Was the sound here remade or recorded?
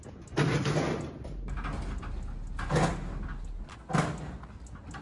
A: recorded